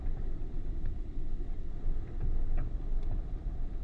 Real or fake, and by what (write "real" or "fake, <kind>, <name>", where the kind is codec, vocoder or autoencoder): real